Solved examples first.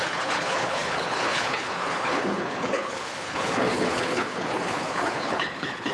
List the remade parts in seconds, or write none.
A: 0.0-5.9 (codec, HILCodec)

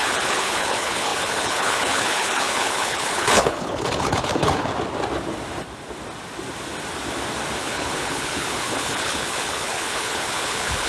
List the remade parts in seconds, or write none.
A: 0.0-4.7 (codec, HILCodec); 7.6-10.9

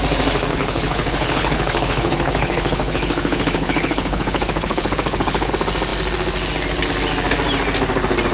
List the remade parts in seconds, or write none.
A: 0.5-5.5 (codec, HILCodec)

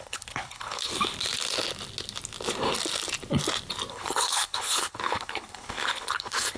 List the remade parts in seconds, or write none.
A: 0.0-0.9 (codec, HILCodec); 3.9-6.6